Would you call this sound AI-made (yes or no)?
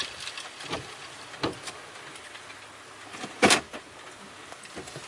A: no